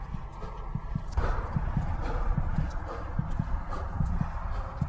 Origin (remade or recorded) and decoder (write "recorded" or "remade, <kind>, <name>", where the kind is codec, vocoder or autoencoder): recorded